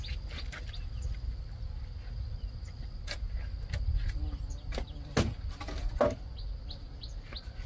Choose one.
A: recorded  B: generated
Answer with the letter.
A